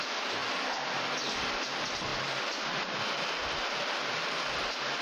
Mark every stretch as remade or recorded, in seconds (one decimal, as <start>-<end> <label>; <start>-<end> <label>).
0.0-5.0 recorded